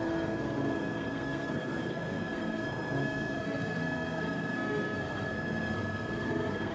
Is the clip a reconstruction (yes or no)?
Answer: yes